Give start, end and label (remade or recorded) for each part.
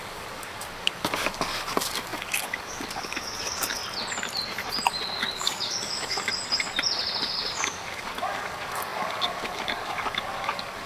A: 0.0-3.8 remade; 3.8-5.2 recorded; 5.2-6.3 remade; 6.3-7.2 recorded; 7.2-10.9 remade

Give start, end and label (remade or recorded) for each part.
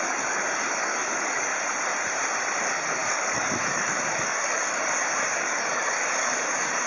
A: 0.0-1.5 remade; 1.5-2.6 recorded; 2.6-6.9 remade